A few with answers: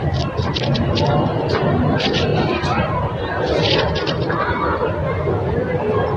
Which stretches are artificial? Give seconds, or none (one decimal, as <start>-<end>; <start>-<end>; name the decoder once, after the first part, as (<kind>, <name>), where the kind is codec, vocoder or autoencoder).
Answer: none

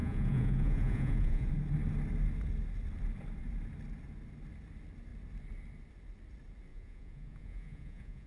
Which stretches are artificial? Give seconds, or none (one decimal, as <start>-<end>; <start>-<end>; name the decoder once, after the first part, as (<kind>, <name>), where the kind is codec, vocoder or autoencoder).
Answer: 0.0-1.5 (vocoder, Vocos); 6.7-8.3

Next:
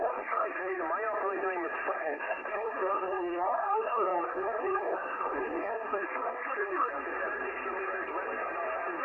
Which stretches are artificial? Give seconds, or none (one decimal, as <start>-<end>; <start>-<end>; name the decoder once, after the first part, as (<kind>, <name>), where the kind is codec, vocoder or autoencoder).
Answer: 0.0-0.8 (codec, SNAC); 1.9-6.9

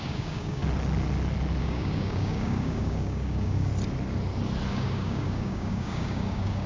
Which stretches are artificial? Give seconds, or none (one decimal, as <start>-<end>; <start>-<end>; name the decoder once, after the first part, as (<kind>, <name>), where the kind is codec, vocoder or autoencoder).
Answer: 0.0-0.6 (codec, DAC); 1.6-3.7; 4.7-6.7

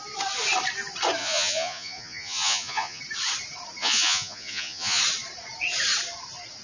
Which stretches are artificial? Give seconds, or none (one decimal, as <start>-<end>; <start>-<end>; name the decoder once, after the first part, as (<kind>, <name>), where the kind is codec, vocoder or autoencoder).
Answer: 1.2-3.0 (vocoder, Vocos); 3.8-5.0